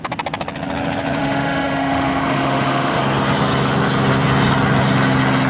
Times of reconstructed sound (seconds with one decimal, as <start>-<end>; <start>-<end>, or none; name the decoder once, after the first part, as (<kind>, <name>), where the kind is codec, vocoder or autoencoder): 1.2-3.0 (autoencoder, DAC-VAE)

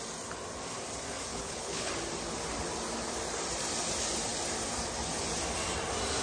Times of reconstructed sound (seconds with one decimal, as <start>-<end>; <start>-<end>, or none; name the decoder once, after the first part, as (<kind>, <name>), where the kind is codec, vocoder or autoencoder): 1.3-1.9 (codec, HILCodec)

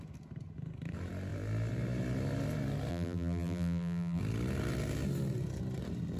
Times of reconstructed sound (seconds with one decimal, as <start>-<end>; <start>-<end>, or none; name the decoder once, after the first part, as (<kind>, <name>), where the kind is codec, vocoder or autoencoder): 2.9-4.2 (vocoder, BigVGAN v2)

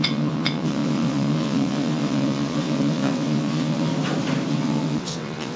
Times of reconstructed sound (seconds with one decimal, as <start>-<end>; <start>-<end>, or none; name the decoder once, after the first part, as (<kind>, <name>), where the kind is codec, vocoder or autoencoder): 0.0-3.9 (vocoder, WaveNeXt); 4.5-5.6

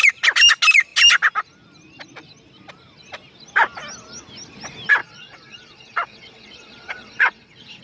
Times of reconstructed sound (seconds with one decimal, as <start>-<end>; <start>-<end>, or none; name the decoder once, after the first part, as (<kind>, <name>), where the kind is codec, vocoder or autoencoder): 5.0-7.8 (vocoder, WaveNeXt)

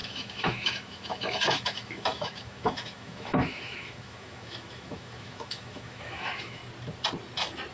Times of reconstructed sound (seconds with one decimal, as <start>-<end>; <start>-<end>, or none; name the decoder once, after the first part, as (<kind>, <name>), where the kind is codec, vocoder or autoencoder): 0.0-6.6 (autoencoder, DAC-VAE)

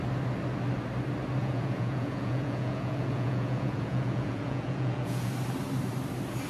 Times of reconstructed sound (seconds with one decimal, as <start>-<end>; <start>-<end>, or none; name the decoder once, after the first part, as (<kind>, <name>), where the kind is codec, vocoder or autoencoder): 1.4-5.3 (vocoder, Vocos)

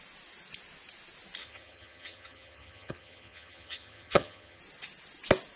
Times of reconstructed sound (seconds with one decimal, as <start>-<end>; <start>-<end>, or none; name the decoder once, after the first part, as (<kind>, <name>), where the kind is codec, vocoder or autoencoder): 1.4-4.6 (vocoder, HiFi-GAN)